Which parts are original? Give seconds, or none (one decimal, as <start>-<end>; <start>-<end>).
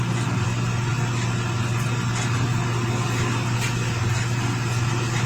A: 0.0-5.3